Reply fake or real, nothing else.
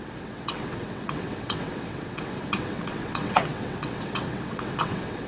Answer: fake